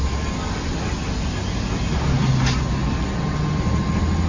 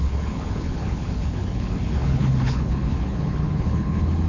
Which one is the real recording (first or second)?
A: first